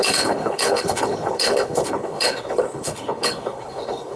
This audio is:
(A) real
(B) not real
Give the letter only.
B